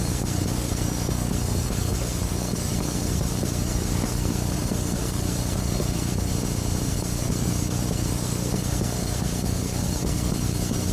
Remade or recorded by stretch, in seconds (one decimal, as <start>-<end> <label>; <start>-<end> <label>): 0.0-6.3 remade; 6.3-6.9 recorded; 6.9-10.9 remade